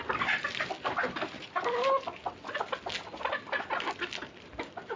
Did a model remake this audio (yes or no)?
no